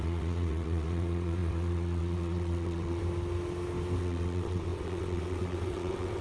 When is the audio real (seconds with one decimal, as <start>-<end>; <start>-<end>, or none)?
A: 3.0-4.0